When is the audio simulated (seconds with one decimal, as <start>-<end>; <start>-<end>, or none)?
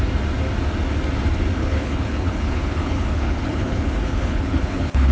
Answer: 1.6-5.1